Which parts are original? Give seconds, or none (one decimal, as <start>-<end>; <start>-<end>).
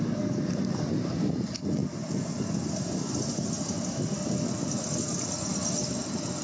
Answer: 0.0-6.4